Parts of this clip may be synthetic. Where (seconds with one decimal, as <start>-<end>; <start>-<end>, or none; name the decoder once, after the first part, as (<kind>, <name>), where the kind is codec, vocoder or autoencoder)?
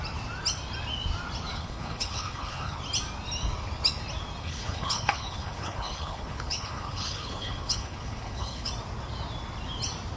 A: 1.5-2.8 (codec, HILCodec); 4.4-8.7